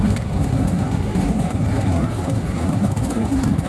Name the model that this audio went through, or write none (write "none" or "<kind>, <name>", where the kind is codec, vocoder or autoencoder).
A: codec, SNAC